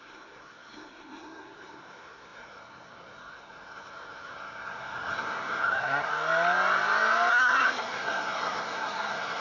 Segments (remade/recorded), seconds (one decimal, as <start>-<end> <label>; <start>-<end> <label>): 0.0-6.1 remade; 6.1-7.3 recorded; 7.3-9.4 remade